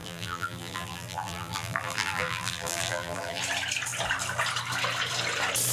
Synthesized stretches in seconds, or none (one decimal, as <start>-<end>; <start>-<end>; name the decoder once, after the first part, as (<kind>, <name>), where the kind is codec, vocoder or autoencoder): 0.0-3.4 (vocoder, BigVGAN v2)